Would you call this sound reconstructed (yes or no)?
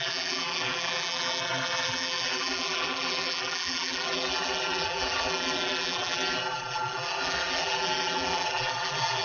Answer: yes